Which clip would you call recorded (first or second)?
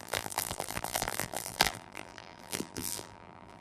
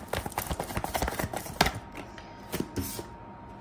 second